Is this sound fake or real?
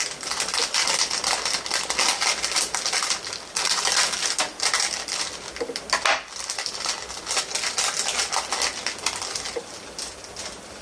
real